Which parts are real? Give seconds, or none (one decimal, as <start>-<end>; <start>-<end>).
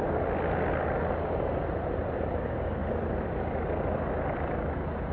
0.0-5.1